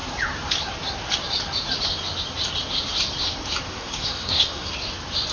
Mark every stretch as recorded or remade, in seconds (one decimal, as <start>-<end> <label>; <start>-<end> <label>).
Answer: 0.0-3.7 recorded; 3.7-4.7 remade; 4.7-5.3 recorded